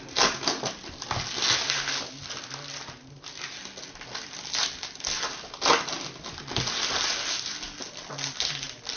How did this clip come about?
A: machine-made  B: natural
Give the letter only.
B